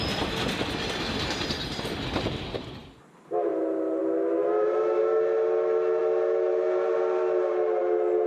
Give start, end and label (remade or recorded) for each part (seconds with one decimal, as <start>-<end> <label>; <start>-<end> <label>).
0.0-8.3 recorded